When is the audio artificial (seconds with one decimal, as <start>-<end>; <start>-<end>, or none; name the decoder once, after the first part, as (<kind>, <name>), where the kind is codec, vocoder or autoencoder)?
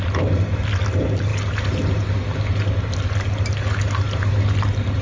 none